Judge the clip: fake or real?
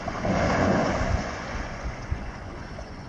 fake